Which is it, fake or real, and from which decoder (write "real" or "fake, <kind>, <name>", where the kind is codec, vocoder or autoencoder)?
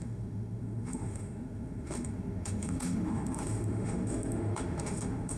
fake, autoencoder, DAC-VAE